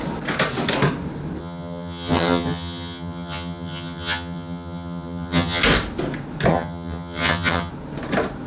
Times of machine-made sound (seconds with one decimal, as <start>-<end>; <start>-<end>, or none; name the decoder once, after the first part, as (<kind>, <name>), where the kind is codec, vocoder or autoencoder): 1.4-5.6 (vocoder, HiFi-GAN); 6.5-7.7

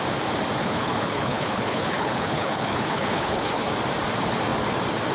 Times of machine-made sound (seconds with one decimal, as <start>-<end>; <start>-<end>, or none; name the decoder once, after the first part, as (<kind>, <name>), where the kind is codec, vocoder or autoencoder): 0.6-3.7 (codec, HILCodec)

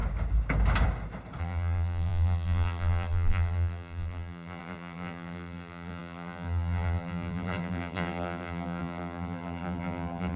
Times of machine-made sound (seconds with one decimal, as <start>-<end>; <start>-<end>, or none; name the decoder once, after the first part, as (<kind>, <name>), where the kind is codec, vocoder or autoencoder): 1.4-10.4 (vocoder, BigVGAN v2)

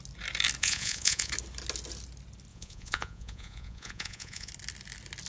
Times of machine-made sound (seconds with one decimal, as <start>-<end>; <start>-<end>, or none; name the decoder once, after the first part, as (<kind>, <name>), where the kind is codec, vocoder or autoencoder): 0.6-1.3 (vocoder, Vocos); 2.5-4.5

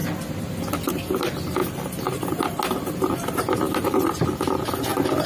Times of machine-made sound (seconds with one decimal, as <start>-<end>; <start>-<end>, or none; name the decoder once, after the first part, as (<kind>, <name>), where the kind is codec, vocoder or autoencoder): none